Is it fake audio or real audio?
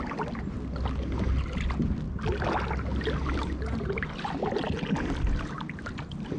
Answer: real